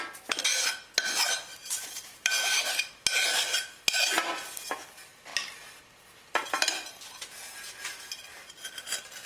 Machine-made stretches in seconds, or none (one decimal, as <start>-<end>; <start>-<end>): 1.5-2.7